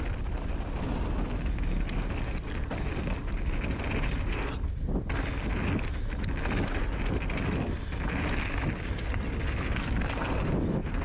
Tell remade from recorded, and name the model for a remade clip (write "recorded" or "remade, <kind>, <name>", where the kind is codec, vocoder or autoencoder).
recorded